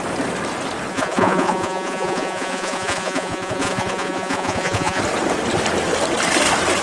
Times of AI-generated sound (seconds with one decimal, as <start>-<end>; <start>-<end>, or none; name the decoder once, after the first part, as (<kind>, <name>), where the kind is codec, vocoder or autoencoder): 0.9-5.0 (vocoder, Vocos)